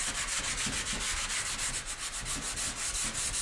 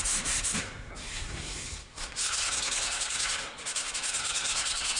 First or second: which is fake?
second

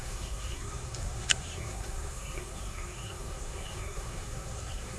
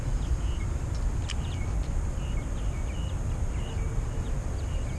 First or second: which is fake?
first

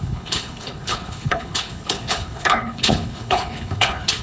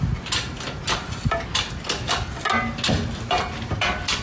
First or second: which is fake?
first